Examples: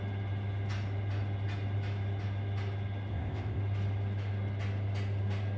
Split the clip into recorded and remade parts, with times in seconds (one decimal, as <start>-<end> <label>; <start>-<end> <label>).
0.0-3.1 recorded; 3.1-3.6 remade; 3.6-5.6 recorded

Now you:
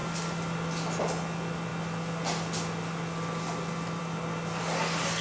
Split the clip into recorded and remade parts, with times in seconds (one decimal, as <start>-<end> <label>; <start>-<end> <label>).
0.0-5.2 recorded

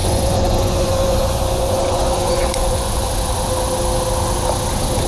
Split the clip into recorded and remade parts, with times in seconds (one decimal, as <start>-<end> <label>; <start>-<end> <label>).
0.0-3.1 remade; 3.1-5.1 recorded

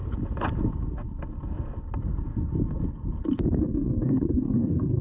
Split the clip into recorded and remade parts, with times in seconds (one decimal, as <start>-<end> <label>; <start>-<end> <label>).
0.0-3.6 recorded; 3.6-5.0 remade

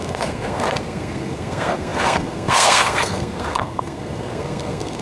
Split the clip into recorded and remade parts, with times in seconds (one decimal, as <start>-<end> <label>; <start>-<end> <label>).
0.0-5.0 remade

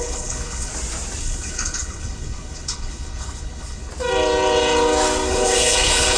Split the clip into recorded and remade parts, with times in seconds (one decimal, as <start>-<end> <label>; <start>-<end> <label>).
0.0-0.7 remade; 0.7-1.2 recorded; 1.2-3.9 remade; 3.9-5.3 recorded; 5.3-6.2 remade

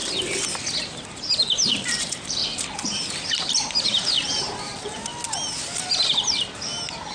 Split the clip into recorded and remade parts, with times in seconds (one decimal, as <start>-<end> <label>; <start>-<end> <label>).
0.0-0.8 recorded; 0.8-2.4 remade; 2.4-3.3 recorded; 3.3-5.1 remade; 5.1-7.1 recorded

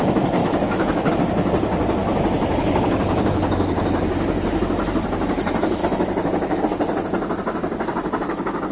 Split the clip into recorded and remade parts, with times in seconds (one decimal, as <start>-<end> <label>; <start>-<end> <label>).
0.0-0.4 recorded; 0.4-1.1 remade; 1.1-2.0 recorded; 2.0-2.7 remade; 2.7-5.8 recorded; 5.8-6.6 remade; 6.6-8.7 recorded